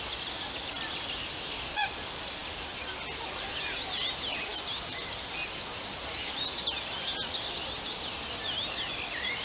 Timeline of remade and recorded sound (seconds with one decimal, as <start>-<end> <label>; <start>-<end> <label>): 0.0-9.4 recorded